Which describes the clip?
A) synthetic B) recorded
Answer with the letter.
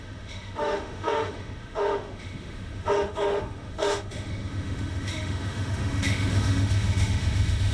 A